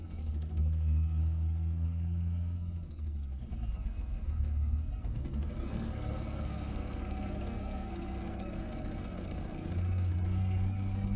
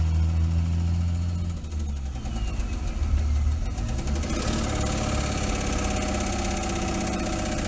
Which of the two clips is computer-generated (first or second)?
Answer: first